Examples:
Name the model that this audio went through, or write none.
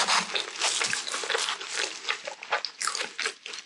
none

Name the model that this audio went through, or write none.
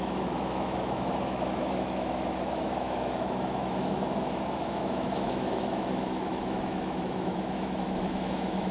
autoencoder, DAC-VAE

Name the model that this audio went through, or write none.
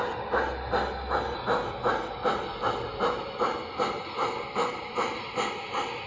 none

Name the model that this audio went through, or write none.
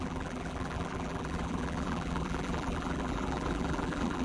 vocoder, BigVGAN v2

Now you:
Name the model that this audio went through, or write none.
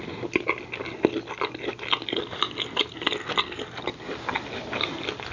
none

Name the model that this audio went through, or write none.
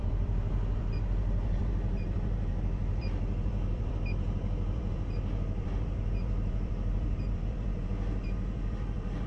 vocoder, BigVGAN v2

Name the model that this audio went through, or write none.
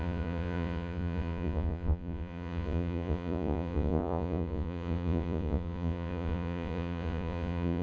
vocoder, Vocos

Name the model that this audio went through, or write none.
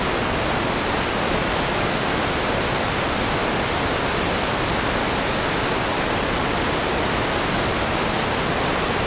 none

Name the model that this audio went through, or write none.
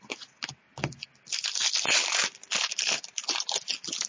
none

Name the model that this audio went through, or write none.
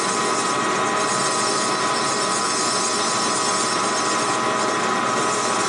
none